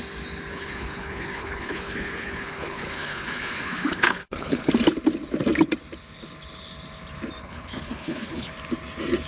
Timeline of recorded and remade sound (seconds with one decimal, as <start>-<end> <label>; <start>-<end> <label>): 0.0-0.5 recorded; 0.5-4.7 remade; 4.7-7.4 recorded; 7.4-8.5 remade; 8.5-9.3 recorded